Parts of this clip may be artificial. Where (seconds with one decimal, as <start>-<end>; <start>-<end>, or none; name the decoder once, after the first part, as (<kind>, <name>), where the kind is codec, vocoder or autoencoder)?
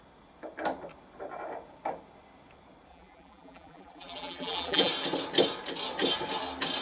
2.9-4.9 (vocoder, BigVGAN v2)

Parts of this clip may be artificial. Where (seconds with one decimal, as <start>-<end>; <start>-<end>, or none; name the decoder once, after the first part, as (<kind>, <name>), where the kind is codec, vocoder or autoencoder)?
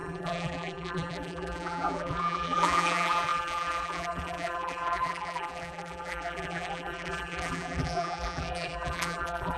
0.0-9.6 (vocoder, BigVGAN v2)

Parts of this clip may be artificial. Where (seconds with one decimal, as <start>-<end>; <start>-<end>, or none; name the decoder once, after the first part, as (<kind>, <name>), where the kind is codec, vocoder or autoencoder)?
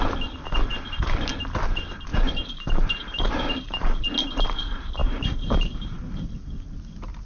2.1-3.8 (vocoder, BigVGAN v2); 5.0-6.0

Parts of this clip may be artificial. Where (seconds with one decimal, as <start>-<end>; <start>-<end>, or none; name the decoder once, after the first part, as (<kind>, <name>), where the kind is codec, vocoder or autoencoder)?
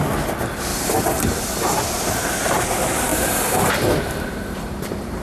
0.7-1.8 (vocoder, BigVGAN v2); 3.1-5.2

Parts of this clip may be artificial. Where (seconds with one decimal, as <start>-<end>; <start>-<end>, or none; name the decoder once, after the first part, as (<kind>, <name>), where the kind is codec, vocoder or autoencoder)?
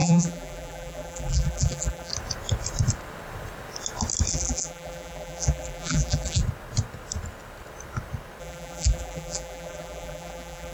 0.0-2.1 (vocoder, BigVGAN v2); 4.3-6.4; 8.4-10.7